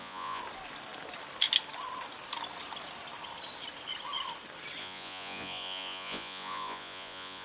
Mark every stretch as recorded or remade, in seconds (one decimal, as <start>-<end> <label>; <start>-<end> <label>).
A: 0.0-0.4 remade; 0.4-4.8 recorded; 4.8-7.4 remade